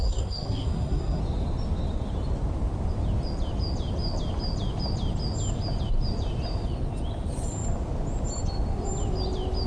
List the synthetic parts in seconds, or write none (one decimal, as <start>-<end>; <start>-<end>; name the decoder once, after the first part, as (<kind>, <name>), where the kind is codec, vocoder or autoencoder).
0.0-1.2 (codec, SNAC)